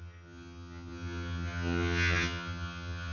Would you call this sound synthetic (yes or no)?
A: yes